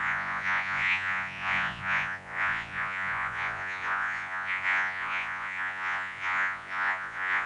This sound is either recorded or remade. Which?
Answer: remade